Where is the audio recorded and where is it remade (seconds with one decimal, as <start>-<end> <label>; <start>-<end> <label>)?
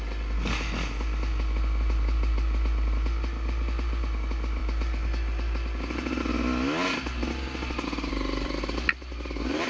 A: 0.0-9.7 recorded